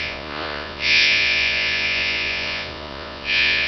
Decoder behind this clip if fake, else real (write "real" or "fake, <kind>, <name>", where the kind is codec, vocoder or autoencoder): fake, vocoder, Vocos